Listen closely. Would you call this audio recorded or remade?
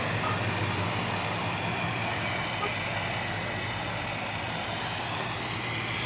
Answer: recorded